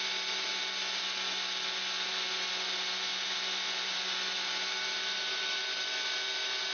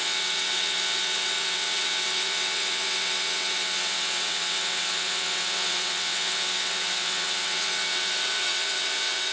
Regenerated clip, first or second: second